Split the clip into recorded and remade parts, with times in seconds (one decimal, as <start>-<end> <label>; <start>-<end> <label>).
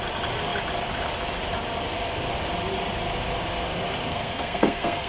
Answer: 0.0-4.1 recorded; 4.1-5.1 remade